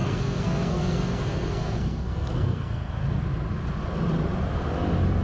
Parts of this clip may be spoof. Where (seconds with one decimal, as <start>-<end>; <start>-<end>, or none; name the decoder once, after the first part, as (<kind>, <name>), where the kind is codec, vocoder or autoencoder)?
0.0-2.9 (codec, SNAC)